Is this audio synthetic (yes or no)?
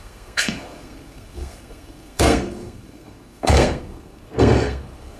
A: yes